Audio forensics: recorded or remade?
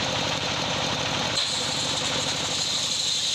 remade